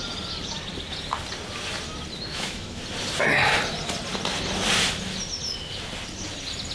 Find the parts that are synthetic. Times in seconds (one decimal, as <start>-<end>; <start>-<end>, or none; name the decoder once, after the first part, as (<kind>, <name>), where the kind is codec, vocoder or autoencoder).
2.3-2.8 (autoencoder, DAC-VAE)